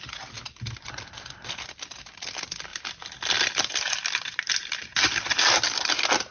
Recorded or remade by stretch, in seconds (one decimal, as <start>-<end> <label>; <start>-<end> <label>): 0.0-6.3 recorded